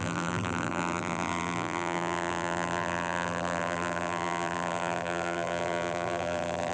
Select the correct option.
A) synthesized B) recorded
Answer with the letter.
A